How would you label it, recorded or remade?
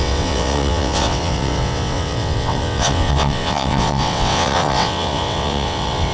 remade